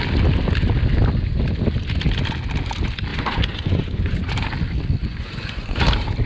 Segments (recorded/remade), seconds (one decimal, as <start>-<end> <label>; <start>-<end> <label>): 0.0-3.1 recorded; 3.1-4.3 remade; 4.3-5.0 recorded; 5.0-5.8 remade; 5.8-6.3 recorded